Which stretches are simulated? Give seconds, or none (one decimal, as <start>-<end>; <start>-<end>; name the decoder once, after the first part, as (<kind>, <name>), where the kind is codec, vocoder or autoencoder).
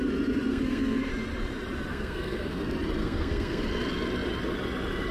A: 0.5-1.1 (codec, SNAC); 1.9-2.6; 3.0-3.6